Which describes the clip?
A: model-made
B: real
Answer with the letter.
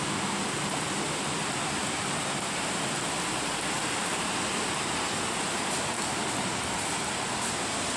B